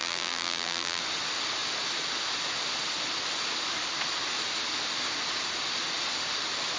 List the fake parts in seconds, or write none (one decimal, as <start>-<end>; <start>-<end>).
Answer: 0.0-1.0